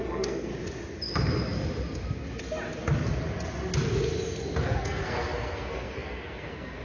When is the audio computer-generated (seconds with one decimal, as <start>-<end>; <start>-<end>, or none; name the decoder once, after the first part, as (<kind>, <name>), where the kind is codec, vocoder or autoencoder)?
0.0-0.5 (codec, SNAC); 4.6-6.8

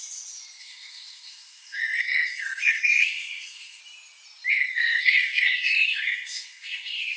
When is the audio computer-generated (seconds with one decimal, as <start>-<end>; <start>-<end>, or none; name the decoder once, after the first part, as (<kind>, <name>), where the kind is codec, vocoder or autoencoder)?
0.6-3.8 (codec, SNAC); 4.5-7.2

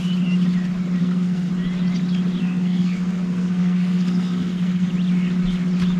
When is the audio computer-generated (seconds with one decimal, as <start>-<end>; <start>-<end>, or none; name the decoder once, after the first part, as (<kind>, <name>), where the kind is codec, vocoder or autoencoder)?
1.0-1.5 (codec, SNAC); 2.4-4.9

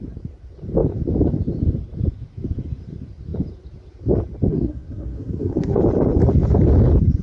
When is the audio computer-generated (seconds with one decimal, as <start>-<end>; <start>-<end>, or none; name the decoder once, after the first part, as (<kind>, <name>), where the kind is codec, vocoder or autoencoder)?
4.5-5.8 (codec, SNAC)